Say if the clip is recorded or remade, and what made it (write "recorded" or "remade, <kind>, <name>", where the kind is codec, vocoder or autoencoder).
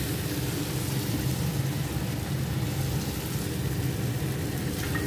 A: recorded